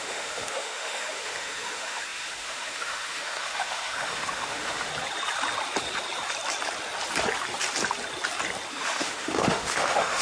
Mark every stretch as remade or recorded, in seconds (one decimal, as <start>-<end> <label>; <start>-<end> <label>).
0.0-4.9 remade; 4.9-8.7 recorded; 8.7-10.2 remade